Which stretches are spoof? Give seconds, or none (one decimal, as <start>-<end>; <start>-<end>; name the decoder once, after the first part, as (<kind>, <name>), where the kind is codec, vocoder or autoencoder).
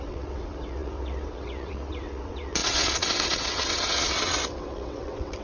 0.0-5.4 (vocoder, WaveNeXt)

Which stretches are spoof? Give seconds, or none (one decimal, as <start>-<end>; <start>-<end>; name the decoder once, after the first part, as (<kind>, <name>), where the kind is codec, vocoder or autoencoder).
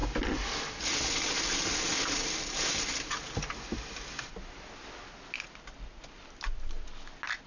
none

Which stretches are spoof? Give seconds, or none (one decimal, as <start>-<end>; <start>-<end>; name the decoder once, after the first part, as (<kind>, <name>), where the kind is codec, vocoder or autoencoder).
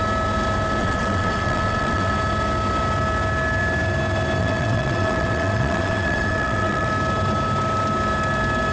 0.8-2.1 (vocoder, WaveNeXt); 4.4-6.9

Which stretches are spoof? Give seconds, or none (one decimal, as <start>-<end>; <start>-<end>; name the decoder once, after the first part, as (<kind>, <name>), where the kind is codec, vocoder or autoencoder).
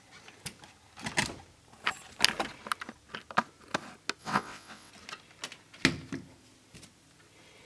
4.2-4.9 (vocoder, WaveNeXt)